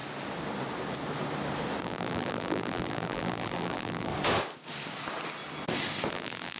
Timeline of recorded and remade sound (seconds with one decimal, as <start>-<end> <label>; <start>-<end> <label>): 0.0-1.8 recorded; 1.8-4.1 remade; 4.1-6.1 recorded; 6.1-6.6 remade